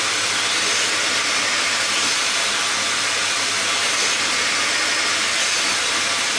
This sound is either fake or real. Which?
real